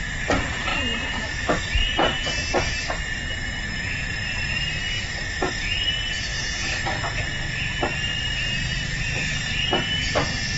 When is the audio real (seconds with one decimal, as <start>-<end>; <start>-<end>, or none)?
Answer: 6.3-8.4